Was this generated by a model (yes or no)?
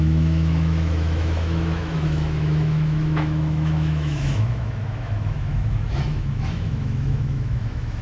yes